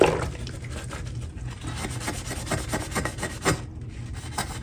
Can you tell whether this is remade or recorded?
recorded